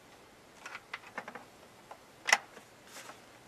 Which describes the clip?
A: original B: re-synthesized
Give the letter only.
A